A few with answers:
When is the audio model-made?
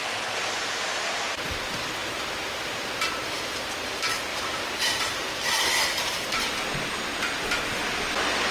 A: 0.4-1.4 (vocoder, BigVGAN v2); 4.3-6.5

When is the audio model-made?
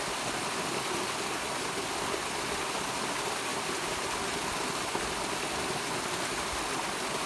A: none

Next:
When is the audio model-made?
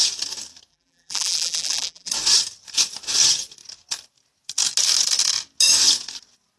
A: 0.7-2.1 (vocoder, BigVGAN v2)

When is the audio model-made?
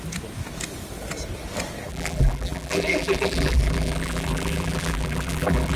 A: 1.9-5.8 (vocoder, BigVGAN v2)